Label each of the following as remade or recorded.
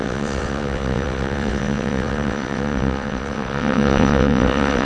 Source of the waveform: remade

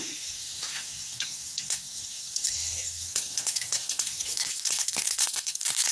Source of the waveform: remade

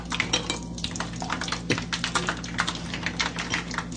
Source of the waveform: recorded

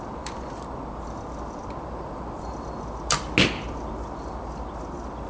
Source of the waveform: recorded